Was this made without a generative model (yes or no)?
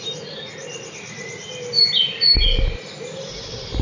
yes